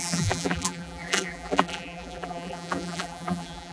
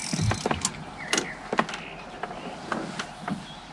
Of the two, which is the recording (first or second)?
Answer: second